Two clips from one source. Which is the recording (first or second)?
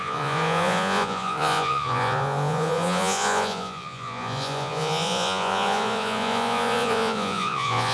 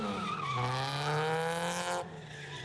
second